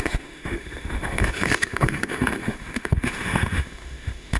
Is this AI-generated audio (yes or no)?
yes